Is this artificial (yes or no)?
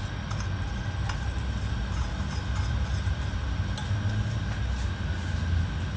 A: no